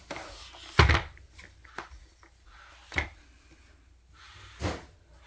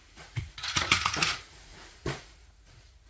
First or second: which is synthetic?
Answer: second